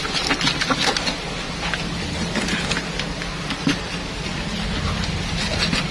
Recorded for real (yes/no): yes